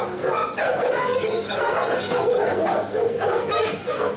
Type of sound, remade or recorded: remade